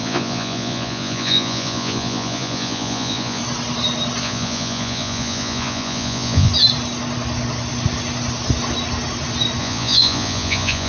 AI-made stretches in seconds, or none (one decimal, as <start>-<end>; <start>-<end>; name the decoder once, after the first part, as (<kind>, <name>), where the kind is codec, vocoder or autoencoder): 0.0-3.4 (vocoder, Vocos); 4.2-6.5; 9.6-10.9